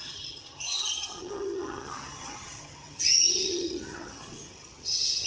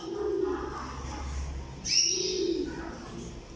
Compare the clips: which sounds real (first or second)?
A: second